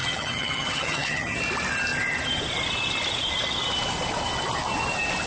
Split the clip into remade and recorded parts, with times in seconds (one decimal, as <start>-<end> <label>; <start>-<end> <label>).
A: 0.0-1.4 remade; 1.4-5.3 recorded